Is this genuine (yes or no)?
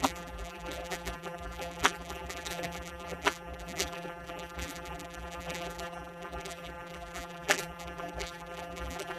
no